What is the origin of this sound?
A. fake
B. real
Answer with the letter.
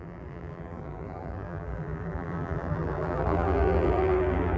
A